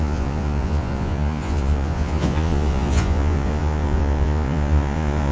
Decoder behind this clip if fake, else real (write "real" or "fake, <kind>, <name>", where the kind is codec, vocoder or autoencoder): fake, vocoder, Vocos